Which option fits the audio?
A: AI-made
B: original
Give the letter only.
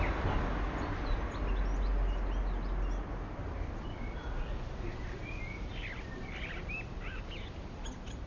B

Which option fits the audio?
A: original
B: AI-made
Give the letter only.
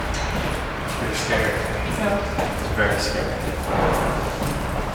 B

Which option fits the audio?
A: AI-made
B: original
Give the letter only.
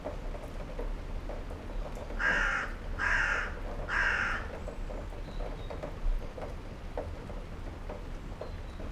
B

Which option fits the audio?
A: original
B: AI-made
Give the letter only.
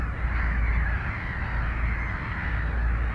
A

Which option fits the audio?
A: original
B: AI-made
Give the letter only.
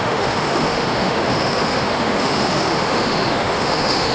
B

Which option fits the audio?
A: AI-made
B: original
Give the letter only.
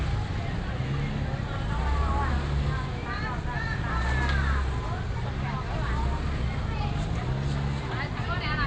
B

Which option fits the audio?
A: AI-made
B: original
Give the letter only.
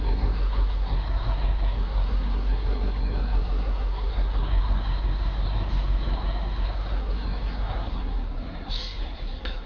A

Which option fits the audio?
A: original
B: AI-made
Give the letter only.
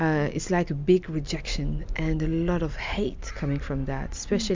A